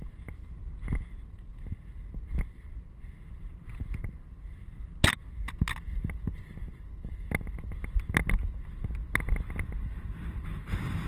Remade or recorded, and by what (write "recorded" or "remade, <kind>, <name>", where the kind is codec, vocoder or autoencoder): recorded